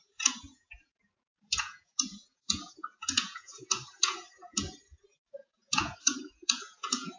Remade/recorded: remade